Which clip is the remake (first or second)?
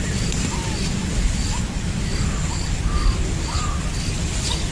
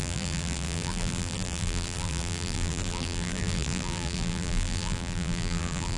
second